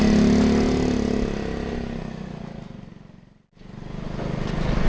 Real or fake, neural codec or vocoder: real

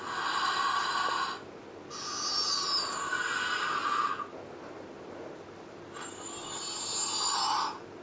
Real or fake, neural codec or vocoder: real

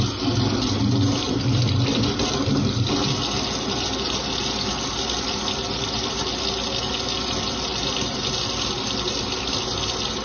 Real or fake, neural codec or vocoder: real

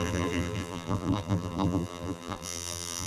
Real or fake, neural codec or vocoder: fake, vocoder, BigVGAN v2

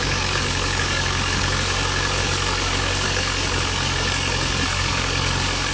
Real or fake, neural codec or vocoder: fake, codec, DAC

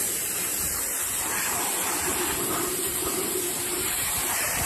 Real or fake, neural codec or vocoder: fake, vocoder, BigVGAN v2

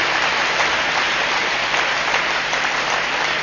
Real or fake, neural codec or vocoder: real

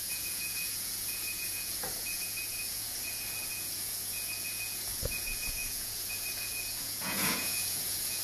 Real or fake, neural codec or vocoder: fake, vocoder, Vocos